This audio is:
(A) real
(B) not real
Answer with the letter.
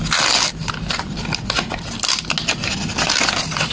A